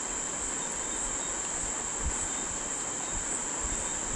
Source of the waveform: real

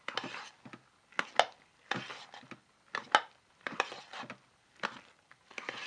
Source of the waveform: real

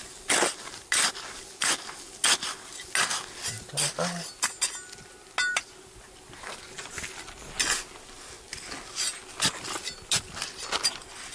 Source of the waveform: real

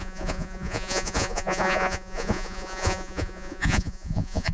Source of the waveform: fake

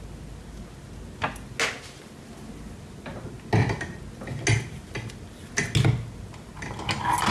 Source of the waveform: real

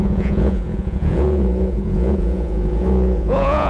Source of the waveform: fake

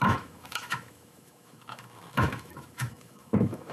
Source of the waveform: fake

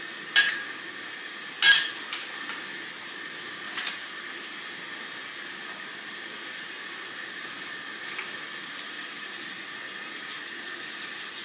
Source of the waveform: real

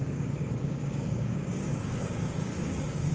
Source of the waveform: fake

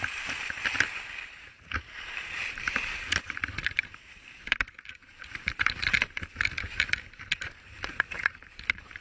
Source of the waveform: fake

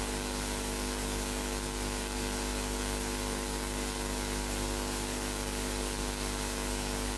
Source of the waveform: fake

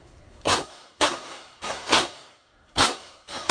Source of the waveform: fake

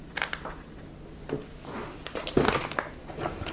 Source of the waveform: real